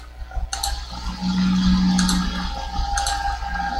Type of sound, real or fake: real